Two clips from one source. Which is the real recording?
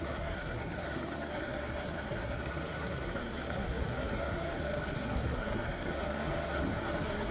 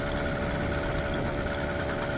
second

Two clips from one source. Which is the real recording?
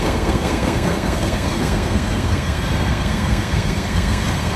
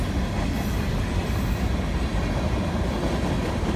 second